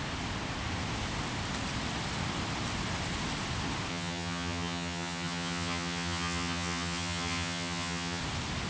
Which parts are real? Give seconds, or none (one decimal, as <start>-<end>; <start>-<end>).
0.0-3.9; 8.2-8.7